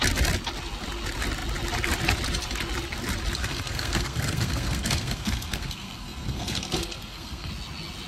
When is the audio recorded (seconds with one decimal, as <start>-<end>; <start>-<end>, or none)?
0.0-3.4; 7.5-8.1